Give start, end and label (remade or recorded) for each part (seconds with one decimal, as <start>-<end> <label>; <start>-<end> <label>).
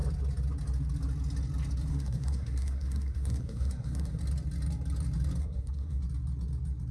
0.0-1.9 recorded; 1.9-4.2 remade; 4.2-5.4 recorded; 5.4-6.0 remade; 6.0-6.9 recorded